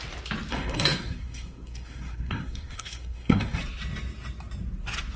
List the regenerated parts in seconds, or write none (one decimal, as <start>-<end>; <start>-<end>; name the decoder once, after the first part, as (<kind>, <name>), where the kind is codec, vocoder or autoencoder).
0.5-3.6 (codec, SNAC)